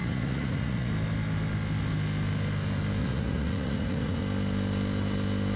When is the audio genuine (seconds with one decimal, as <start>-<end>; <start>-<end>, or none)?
0.9-3.0; 4.2-5.6